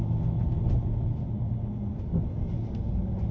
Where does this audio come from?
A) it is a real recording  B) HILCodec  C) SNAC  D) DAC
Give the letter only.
A